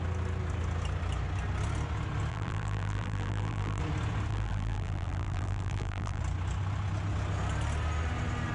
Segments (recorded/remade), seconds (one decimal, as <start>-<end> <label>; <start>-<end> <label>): 0.0-2.3 recorded; 2.3-3.8 remade; 3.8-4.3 recorded; 4.3-6.2 remade; 6.2-8.5 recorded